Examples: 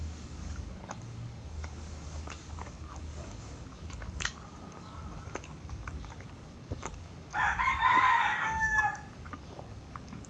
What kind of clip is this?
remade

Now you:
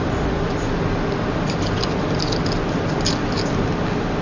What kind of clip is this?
recorded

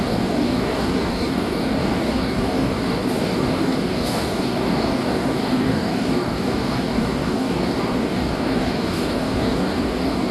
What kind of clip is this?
remade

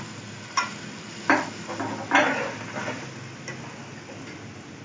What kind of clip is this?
recorded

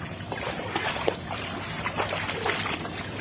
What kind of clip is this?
recorded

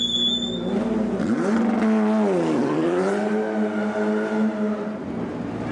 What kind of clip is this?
recorded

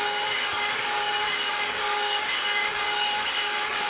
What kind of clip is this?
remade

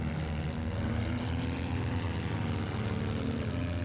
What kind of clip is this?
recorded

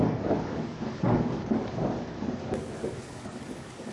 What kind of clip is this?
remade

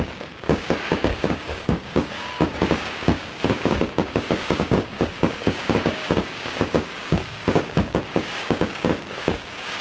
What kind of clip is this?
remade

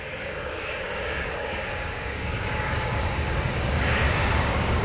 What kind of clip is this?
remade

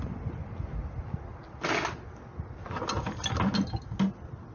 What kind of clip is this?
recorded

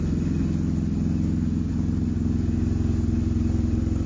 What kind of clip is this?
recorded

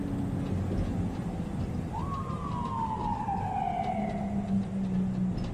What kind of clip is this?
recorded